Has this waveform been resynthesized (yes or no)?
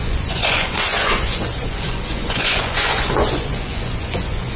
yes